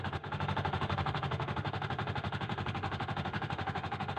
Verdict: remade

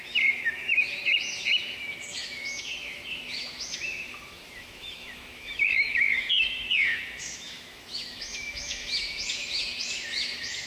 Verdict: remade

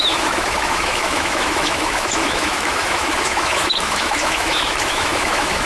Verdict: remade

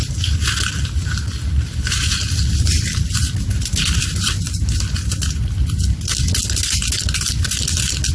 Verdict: recorded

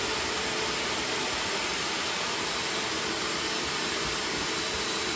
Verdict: recorded